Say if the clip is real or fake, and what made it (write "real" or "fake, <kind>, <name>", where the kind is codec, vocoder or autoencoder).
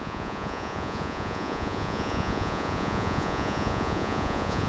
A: fake, vocoder, Vocos